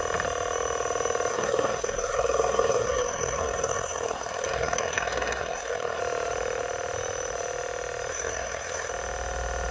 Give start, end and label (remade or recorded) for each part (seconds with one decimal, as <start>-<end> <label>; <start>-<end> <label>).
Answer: 0.0-1.3 recorded; 1.3-6.0 remade; 6.0-8.1 recorded; 8.1-8.9 remade; 8.9-9.7 recorded